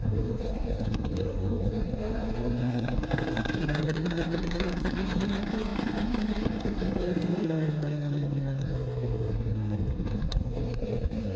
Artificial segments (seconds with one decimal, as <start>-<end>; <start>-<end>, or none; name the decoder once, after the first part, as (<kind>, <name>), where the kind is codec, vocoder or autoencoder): 0.0-11.4 (codec, SNAC)